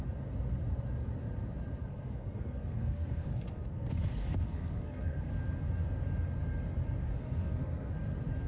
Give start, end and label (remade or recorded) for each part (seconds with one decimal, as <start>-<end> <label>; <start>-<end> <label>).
0.0-1.8 recorded; 1.8-5.3 remade; 5.3-7.0 recorded; 7.0-7.9 remade; 7.9-8.5 recorded